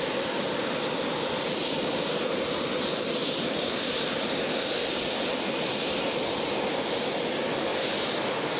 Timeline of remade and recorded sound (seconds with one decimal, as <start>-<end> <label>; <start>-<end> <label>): 0.0-8.6 recorded

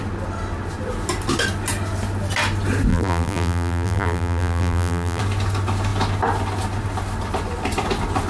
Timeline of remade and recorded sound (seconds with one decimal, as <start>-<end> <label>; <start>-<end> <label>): 0.0-2.9 recorded; 2.9-5.2 remade; 5.2-8.3 recorded

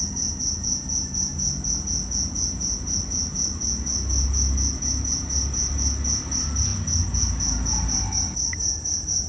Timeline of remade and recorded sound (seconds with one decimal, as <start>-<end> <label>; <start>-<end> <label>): 0.0-9.3 recorded

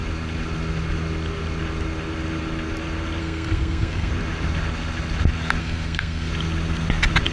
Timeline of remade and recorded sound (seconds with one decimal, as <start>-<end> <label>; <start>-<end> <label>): 0.0-3.2 recorded; 3.2-4.1 remade; 4.1-5.6 recorded; 5.6-6.3 remade; 6.3-7.3 recorded

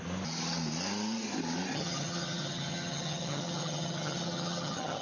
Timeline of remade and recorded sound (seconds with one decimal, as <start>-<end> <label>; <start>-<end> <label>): 0.0-1.7 recorded; 1.7-5.0 remade

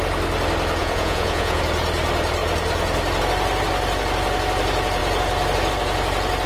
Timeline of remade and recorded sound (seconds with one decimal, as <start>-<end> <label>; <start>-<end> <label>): 0.0-0.8 recorded; 0.8-1.6 remade; 1.6-6.5 recorded